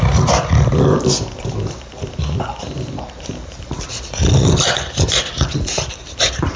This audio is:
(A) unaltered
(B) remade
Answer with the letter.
A